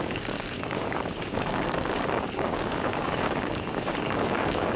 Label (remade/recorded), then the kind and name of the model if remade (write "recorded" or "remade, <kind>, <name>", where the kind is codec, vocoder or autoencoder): remade, codec, DAC